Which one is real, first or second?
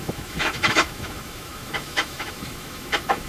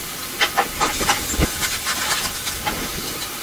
second